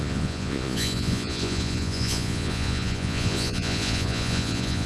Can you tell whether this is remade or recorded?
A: remade